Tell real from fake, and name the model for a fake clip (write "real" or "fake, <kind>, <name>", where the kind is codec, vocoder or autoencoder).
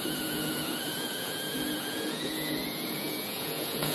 fake, vocoder, Vocos